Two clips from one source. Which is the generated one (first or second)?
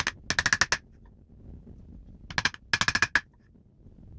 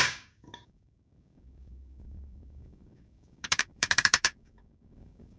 second